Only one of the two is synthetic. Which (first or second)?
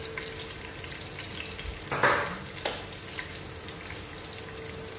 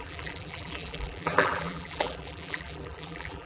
second